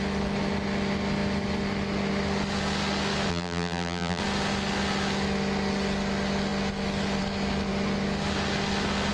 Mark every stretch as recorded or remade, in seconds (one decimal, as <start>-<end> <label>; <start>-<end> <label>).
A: 0.0-3.3 recorded; 3.3-4.2 remade; 4.2-9.1 recorded